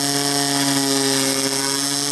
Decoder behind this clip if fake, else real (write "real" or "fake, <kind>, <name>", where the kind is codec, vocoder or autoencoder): real